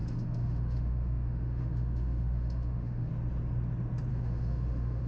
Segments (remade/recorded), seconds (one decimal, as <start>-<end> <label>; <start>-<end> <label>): 0.0-3.1 remade; 3.1-4.1 recorded; 4.1-5.1 remade